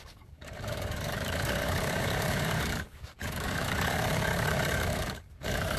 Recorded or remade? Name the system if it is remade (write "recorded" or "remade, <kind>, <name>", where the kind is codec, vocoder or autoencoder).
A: remade, codec, DAC